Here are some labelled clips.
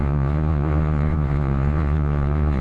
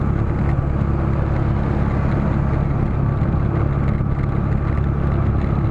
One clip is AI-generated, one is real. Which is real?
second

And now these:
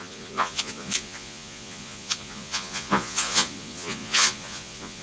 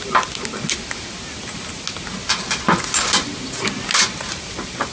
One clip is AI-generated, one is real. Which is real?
second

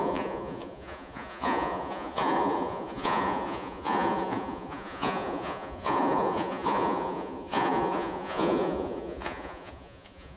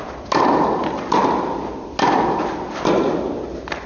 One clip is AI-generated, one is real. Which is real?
second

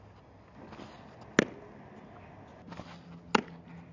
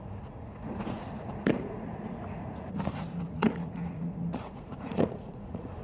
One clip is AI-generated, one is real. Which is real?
first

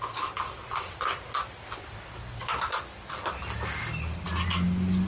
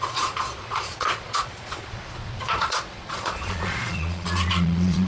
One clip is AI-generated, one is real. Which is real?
first